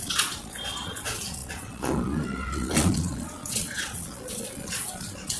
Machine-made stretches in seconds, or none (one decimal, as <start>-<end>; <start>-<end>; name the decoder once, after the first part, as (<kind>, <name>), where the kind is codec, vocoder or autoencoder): 0.0-5.4 (vocoder, Vocos)